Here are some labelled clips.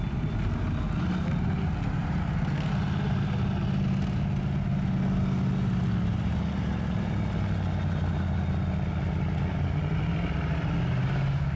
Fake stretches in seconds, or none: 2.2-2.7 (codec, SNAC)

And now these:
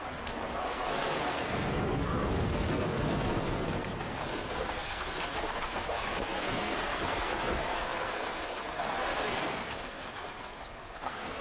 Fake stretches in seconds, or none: 0.0-11.4 (codec, SNAC)

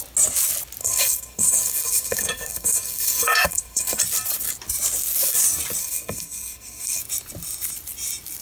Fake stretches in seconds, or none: 0.8-4.0 (codec, SNAC); 5.8-7.0

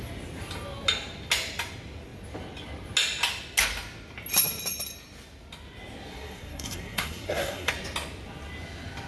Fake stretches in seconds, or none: 6.1-7.7 (codec, SNAC)

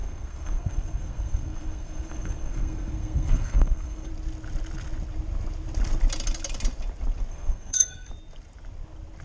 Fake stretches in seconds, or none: 0.0-4.1 (codec, SNAC); 7.3-8.1

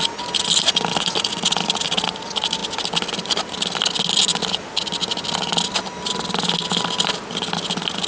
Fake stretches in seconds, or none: none